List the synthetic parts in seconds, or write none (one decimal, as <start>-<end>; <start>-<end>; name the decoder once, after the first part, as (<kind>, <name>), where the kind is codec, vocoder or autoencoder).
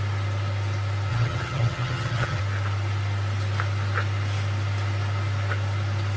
1.1-2.4 (vocoder, HiFi-GAN)